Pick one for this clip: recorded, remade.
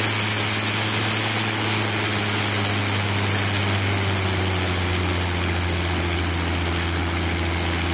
recorded